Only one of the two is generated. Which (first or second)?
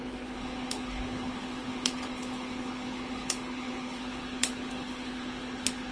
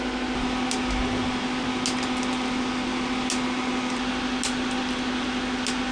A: first